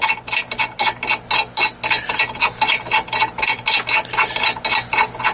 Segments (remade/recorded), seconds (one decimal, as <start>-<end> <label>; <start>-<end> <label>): 0.0-5.3 recorded